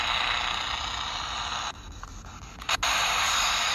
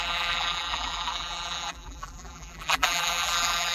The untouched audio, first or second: first